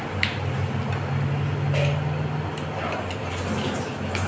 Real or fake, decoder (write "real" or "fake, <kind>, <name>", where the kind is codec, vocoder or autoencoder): real